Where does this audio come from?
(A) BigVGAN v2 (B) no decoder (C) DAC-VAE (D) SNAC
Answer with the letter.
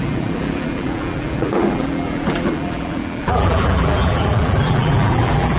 A